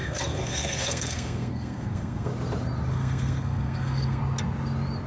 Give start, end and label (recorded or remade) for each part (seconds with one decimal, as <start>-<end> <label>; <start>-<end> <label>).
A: 0.0-2.3 remade; 2.3-2.9 recorded; 2.9-4.2 remade; 4.2-5.1 recorded